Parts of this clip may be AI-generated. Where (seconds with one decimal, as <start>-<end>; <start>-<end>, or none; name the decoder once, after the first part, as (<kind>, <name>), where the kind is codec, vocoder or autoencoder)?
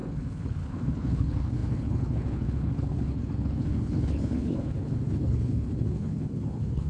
0.0-6.9 (codec, HILCodec)